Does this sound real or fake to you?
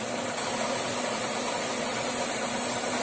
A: real